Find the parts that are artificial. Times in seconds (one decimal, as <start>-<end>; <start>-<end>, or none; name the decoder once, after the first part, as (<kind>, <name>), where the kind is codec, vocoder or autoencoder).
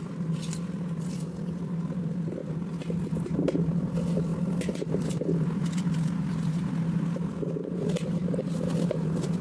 0.0-9.4 (vocoder, BigVGAN v2)